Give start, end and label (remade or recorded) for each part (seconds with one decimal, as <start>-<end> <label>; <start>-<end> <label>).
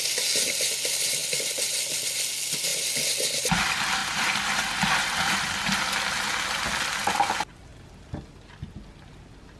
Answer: 0.0-4.0 recorded; 4.0-4.7 remade; 4.7-9.6 recorded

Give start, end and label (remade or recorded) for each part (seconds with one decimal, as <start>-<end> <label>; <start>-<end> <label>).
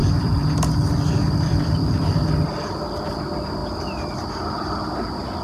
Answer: 0.0-3.2 remade; 3.2-5.4 recorded